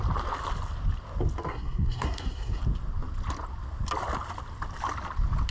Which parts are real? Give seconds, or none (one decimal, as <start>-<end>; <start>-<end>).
0.0-1.5; 2.6-5.5